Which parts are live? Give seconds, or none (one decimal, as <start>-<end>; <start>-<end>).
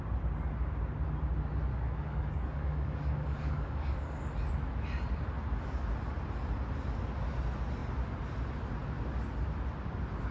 0.0-1.7; 4.3-10.3